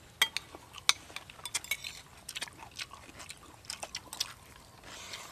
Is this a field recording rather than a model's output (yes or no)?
yes